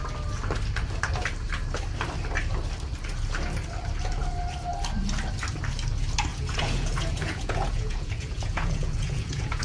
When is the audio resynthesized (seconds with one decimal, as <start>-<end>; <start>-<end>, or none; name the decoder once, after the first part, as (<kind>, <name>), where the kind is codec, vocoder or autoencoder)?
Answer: 6.3-9.6 (vocoder, Vocos)